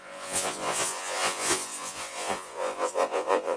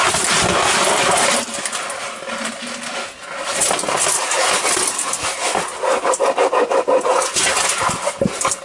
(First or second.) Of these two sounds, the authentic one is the second